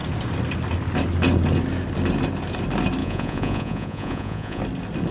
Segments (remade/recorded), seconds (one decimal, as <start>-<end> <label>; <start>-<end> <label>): 0.0-3.0 recorded; 3.0-4.6 remade; 4.6-5.1 recorded

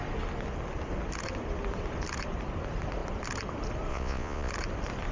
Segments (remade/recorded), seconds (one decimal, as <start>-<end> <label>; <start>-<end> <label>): 0.0-3.9 recorded; 3.9-4.5 remade; 4.5-5.1 recorded

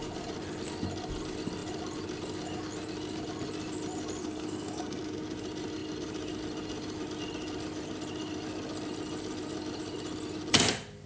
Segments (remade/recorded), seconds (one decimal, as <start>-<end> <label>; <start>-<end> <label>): 0.0-4.2 recorded; 4.2-5.0 remade; 5.0-11.1 recorded

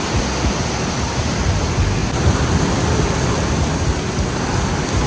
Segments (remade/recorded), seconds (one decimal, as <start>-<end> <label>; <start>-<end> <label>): 0.0-5.1 recorded

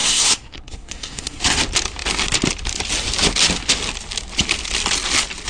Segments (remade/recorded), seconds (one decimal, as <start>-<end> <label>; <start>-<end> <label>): 0.0-1.4 remade; 1.4-5.5 recorded

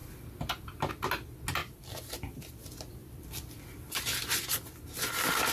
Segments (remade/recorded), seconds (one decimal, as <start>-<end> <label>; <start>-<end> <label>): 0.0-0.9 remade; 0.9-1.6 recorded; 1.6-2.6 remade; 2.6-3.0 recorded; 3.0-4.4 remade; 4.4-5.5 recorded

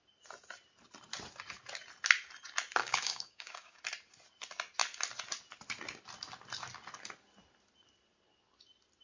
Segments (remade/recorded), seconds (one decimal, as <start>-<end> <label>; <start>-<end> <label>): 0.0-2.8 recorded; 2.8-3.8 remade; 3.8-9.0 recorded

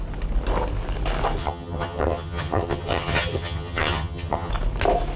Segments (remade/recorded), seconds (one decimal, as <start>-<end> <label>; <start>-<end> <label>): 0.0-1.4 recorded; 1.4-4.5 remade; 4.5-5.2 recorded